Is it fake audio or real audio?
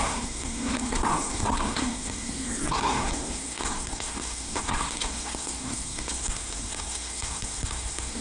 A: fake